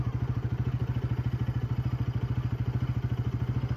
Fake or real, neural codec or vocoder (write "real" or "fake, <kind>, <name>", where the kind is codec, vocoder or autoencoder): real